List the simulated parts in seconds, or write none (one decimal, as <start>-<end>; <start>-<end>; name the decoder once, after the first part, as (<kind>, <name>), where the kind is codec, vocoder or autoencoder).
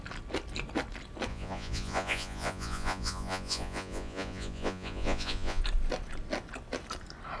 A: 1.3-5.6 (vocoder, Vocos)